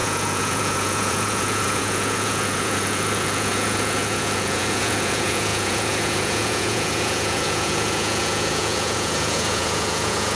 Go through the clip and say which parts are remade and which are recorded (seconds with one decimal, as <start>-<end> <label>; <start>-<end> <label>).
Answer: 0.0-10.3 remade